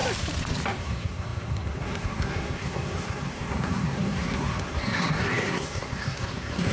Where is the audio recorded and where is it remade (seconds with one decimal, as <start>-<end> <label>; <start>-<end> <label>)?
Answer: 0.0-0.8 recorded; 0.8-6.7 remade